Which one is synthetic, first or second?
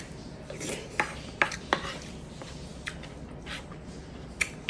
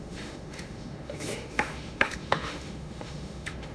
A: second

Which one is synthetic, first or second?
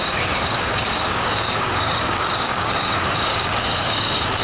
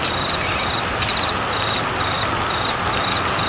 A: first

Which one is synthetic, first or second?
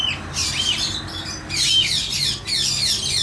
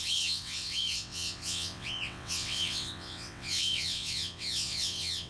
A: second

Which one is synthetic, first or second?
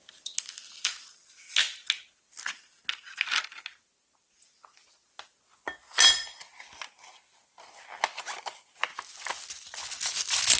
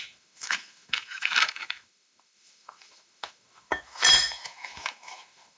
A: second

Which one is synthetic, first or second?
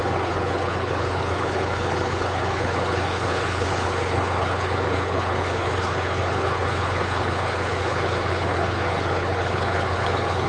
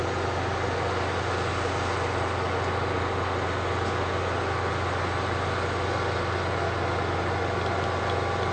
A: first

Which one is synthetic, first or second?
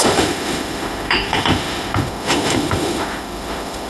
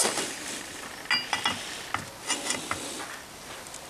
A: first